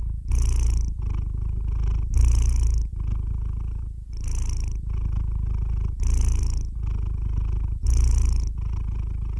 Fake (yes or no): no